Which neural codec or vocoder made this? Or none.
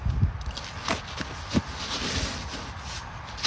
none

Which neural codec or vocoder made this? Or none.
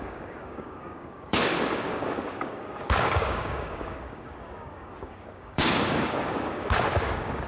codec, DAC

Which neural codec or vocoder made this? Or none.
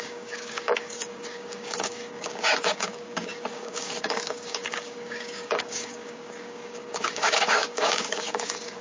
codec, DAC